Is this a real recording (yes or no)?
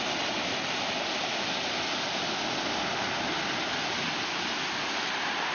yes